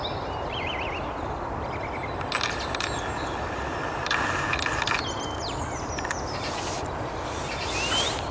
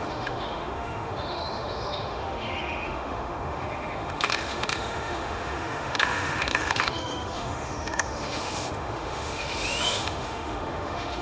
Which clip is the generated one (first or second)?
second